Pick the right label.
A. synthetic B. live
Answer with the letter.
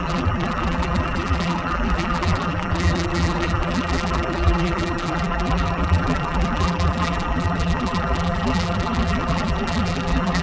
A